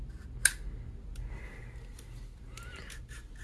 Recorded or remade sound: recorded